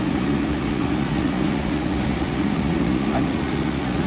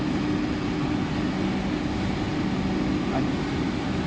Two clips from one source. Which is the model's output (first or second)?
first